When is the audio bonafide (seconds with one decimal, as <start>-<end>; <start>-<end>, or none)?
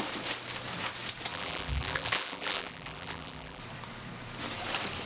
0.0-1.3; 3.6-5.1